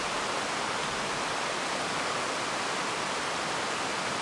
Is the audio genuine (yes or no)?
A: yes